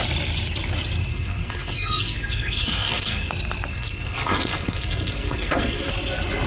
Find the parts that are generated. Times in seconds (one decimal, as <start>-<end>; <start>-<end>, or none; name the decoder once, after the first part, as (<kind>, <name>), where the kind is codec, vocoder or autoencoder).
1.1-3.3 (codec, SNAC); 3.7-5.9